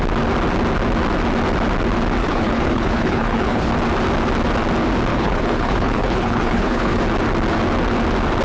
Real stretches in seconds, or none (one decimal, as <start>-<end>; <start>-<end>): 0.0-2.2; 3.7-5.1; 7.0-8.4